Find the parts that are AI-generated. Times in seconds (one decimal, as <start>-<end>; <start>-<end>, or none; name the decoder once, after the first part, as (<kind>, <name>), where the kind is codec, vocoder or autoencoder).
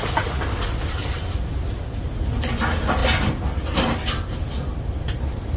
none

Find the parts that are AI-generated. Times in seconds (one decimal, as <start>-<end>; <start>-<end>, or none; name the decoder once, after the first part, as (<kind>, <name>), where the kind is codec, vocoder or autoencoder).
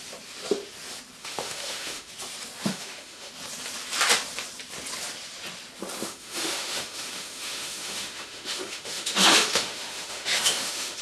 1.2-2.1 (autoencoder, DAC-VAE); 2.7-3.3; 6.0-11.0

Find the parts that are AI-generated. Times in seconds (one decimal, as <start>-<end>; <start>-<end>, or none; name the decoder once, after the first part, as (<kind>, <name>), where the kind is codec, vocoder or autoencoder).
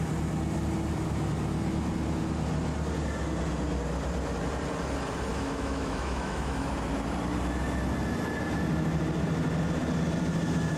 5.3-6.7 (autoencoder, DAC-VAE)